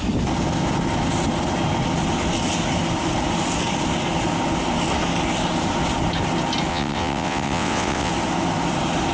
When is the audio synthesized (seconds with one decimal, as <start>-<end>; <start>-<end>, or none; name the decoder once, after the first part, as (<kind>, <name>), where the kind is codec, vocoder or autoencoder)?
6.7-8.1 (vocoder, WaveNeXt)